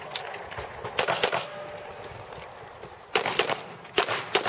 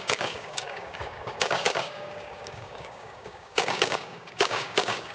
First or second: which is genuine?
first